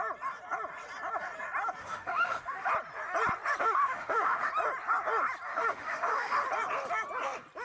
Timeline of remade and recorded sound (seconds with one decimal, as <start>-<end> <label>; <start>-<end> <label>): 0.0-1.8 recorded; 1.8-2.7 remade; 2.7-3.6 recorded; 3.6-4.5 remade; 4.5-5.5 recorded; 5.5-6.4 remade; 6.4-7.6 recorded